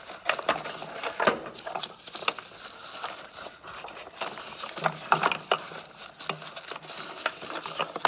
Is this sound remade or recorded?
recorded